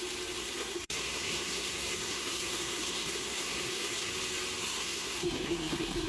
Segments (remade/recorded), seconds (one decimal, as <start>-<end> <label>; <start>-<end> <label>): 0.0-0.4 recorded; 0.4-4.1 remade; 4.1-4.6 recorded; 4.6-6.1 remade